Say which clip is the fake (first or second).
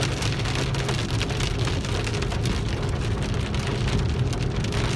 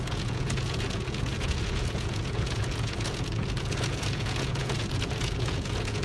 second